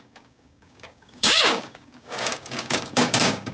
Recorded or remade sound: remade